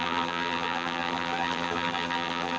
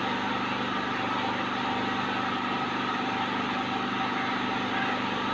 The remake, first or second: first